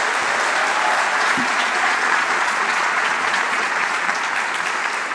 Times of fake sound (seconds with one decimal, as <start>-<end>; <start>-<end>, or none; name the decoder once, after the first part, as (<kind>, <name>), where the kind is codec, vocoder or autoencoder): 1.1-4.2 (vocoder, Vocos)

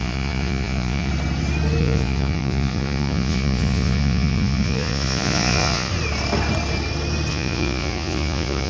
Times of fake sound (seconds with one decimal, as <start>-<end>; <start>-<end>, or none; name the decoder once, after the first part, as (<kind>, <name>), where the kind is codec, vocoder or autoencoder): 0.0-1.1 (vocoder, Vocos); 1.8-5.9; 7.3-8.7

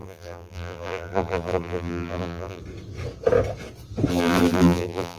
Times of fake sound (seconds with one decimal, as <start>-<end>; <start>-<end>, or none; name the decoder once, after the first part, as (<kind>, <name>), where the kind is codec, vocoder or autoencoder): 0.0-2.6 (vocoder, BigVGAN v2); 4.1-5.2

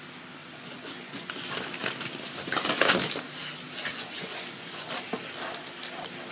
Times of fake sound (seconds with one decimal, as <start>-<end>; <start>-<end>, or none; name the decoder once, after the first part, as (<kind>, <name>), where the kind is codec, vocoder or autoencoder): 0.4-1.3 (vocoder, Vocos); 3.9-4.9

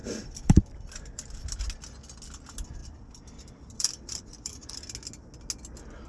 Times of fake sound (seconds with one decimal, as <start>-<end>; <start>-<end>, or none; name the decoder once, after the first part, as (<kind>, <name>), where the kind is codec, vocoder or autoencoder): 0.0-1.6 (vocoder, BigVGAN v2); 2.8-4.7

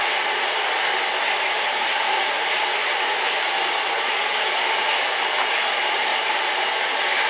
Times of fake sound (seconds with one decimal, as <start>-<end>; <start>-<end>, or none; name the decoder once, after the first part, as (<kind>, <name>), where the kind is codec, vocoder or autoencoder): 1.7-3.8 (vocoder, BigVGAN v2); 6.1-6.8

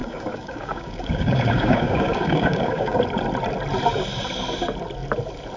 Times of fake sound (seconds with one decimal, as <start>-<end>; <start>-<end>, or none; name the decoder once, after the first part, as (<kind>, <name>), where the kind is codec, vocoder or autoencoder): 0.0-3.0 (codec, DAC)